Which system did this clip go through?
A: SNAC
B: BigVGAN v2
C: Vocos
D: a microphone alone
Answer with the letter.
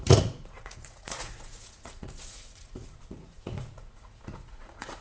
C